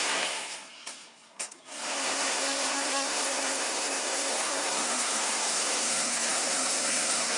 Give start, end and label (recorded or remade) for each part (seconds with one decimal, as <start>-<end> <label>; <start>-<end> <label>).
0.0-7.4 remade